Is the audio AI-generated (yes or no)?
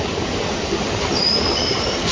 yes